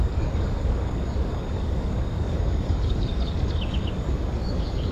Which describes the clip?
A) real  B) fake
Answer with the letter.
B